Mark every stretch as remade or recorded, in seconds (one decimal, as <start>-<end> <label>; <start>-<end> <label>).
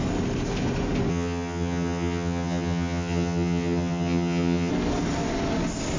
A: 0.0-1.1 recorded; 1.1-4.7 remade; 4.7-6.0 recorded